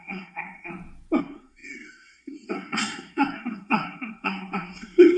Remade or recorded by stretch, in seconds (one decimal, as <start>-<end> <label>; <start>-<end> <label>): 0.0-0.7 remade; 0.7-1.2 recorded; 1.2-5.2 remade